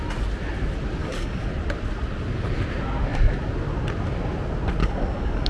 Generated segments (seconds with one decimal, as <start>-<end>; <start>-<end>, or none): 1.0-1.5; 4.8-5.5